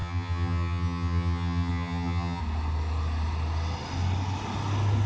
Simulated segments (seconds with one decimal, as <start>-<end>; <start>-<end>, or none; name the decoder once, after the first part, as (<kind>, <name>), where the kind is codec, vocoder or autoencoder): 0.0-2.4 (vocoder, HiFi-GAN)